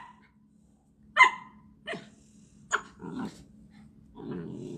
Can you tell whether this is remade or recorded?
recorded